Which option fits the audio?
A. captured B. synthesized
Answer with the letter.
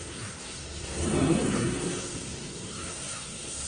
B